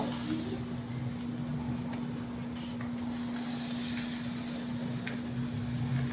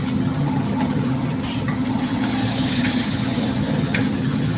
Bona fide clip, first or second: first